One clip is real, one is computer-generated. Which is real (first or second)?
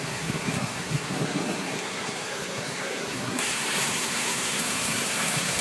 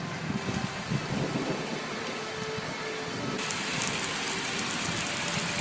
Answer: second